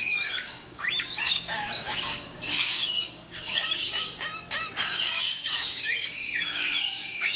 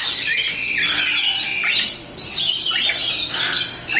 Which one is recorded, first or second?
second